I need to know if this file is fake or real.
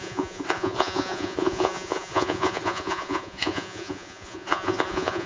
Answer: fake